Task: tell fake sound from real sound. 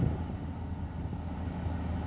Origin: real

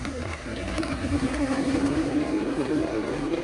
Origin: fake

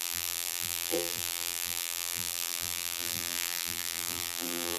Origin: fake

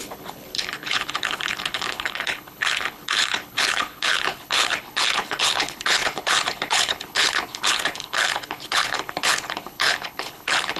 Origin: fake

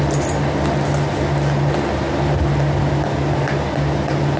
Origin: real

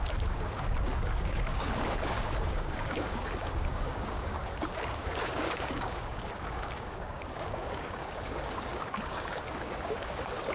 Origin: fake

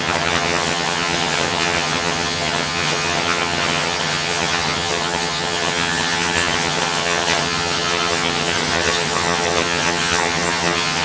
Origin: fake